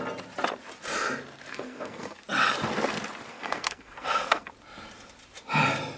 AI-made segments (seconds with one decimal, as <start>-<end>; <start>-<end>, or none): 1.5-2.2; 3.3-4.5